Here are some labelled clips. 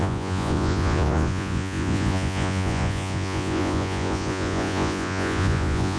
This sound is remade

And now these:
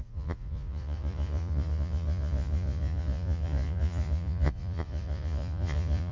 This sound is remade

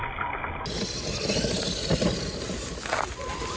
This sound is recorded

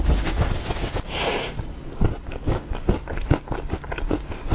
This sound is recorded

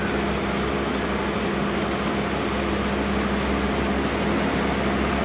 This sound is recorded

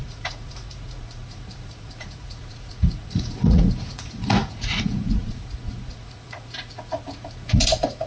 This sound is remade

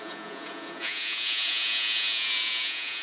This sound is remade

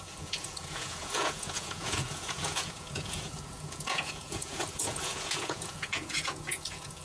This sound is remade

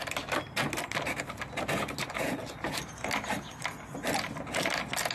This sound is recorded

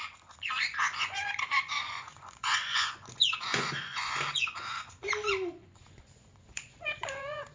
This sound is remade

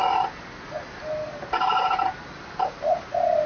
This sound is recorded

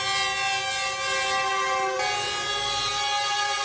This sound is recorded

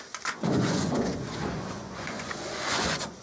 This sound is remade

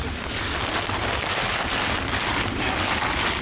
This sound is recorded